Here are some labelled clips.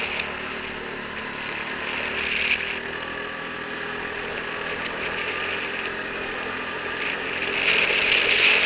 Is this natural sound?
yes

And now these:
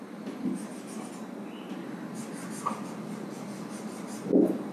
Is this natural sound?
yes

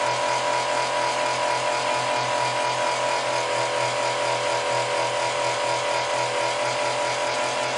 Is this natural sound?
yes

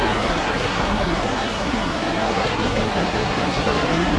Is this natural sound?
no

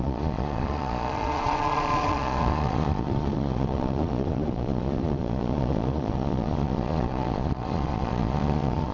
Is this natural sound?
no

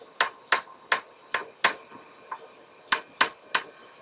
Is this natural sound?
yes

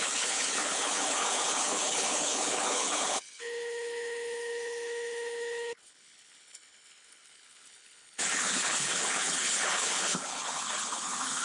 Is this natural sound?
no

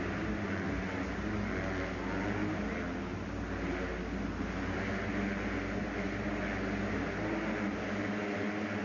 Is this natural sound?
yes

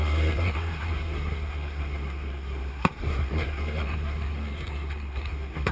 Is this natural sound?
no